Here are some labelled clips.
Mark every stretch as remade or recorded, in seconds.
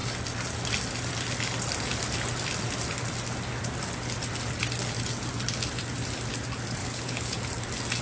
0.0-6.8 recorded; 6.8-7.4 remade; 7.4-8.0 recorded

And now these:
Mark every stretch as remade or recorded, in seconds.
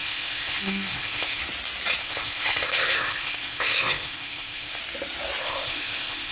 0.0-1.4 remade; 1.4-2.0 recorded; 2.0-4.8 remade; 4.8-5.4 recorded; 5.4-6.3 remade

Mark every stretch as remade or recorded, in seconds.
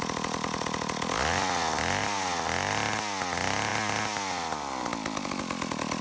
0.0-6.0 recorded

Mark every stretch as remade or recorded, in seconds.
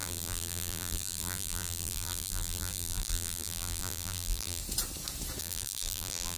0.0-4.6 remade; 4.6-5.4 recorded; 5.4-6.4 remade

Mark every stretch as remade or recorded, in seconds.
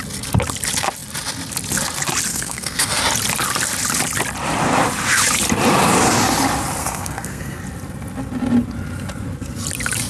0.0-2.3 recorded; 2.3-3.0 remade; 3.0-6.8 recorded; 6.8-7.6 remade; 7.6-10.1 recorded